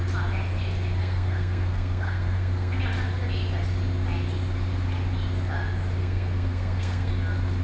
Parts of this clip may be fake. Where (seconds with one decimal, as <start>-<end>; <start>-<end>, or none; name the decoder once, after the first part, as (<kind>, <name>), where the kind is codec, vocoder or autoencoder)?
1.0-2.8 (codec, SNAC); 6.0-7.1